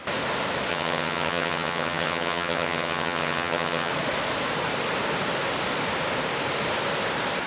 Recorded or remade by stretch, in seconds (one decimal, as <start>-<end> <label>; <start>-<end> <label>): 0.0-0.7 recorded; 0.7-3.9 remade; 3.9-7.5 recorded